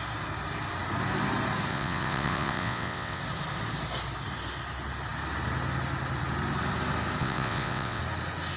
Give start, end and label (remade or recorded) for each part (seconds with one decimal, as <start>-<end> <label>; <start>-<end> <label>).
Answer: 0.0-1.7 recorded; 1.7-3.2 remade; 3.2-7.2 recorded; 7.2-8.0 remade; 8.0-8.6 recorded

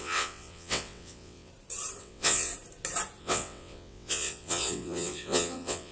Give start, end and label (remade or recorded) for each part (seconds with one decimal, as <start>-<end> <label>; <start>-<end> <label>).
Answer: 0.0-1.5 remade; 1.5-2.0 recorded; 2.0-2.5 remade; 2.5-3.2 recorded; 3.2-5.9 remade

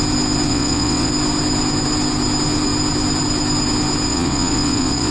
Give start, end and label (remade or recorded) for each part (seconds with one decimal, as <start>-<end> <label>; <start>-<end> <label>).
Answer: 0.0-0.5 recorded; 0.5-1.1 remade; 1.1-4.1 recorded; 4.1-5.1 remade

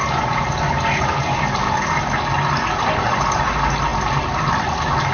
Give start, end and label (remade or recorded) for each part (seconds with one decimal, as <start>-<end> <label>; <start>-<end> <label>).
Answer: 0.0-5.1 recorded

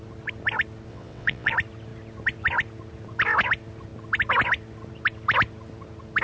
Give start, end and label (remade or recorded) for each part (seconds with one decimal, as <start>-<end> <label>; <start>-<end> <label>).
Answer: 0.0-0.9 recorded; 0.9-1.5 remade; 1.5-6.2 recorded

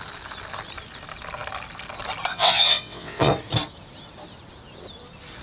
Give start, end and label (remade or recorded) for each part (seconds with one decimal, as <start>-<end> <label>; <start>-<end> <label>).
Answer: 0.0-2.3 recorded; 2.3-3.3 remade; 3.3-5.4 recorded

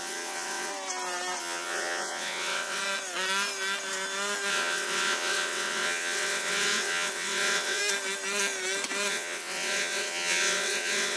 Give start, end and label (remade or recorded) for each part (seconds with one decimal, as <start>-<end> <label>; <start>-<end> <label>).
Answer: 0.0-0.7 remade; 0.7-1.4 recorded; 1.4-2.8 remade; 2.8-4.5 recorded; 4.5-7.8 remade; 7.8-9.1 recorded; 9.1-11.2 remade